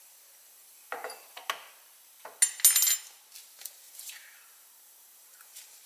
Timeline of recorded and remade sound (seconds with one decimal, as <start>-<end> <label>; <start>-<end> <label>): 0.0-1.4 remade; 1.4-3.4 recorded; 3.4-5.9 remade